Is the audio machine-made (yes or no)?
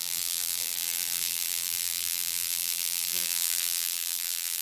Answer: yes